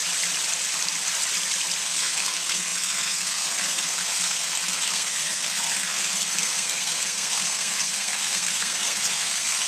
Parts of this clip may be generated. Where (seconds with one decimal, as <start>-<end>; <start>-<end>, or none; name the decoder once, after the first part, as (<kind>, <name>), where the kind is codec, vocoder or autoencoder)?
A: 1.8-9.7 (codec, SNAC)